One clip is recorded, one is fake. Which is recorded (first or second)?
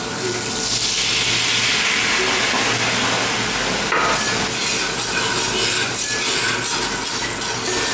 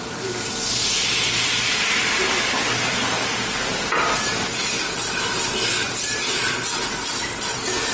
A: first